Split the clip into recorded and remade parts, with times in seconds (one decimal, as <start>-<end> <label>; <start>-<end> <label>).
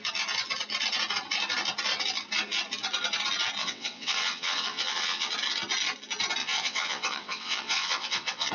0.0-3.6 recorded; 3.6-5.3 remade; 5.3-6.4 recorded; 6.4-8.5 remade